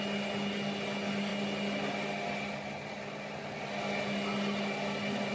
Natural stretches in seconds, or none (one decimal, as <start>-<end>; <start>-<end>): 0.0-5.3